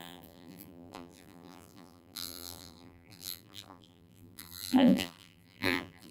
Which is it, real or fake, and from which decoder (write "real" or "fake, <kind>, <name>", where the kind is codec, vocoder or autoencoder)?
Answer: fake, vocoder, BigVGAN v2